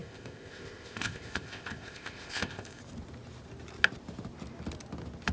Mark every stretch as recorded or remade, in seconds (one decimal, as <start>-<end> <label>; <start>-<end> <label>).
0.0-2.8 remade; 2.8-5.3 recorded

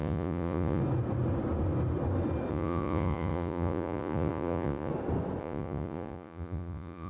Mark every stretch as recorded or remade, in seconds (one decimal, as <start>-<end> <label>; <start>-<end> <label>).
0.0-0.8 remade; 0.8-2.5 recorded; 2.5-4.9 remade; 4.9-5.4 recorded; 5.4-7.1 remade

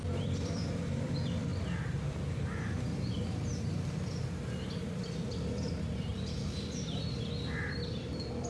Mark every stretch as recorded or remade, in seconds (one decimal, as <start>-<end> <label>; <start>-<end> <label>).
0.0-6.1 remade; 6.1-7.0 recorded; 7.0-8.5 remade

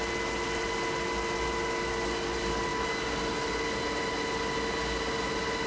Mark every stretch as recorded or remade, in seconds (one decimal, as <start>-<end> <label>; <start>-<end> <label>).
0.0-5.7 recorded

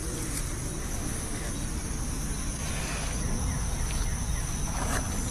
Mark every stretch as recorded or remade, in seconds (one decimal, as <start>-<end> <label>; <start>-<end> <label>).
0.0-0.8 recorded; 0.8-1.5 remade; 1.5-5.3 recorded